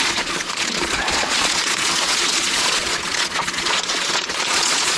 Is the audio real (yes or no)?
no